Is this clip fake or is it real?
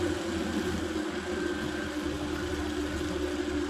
real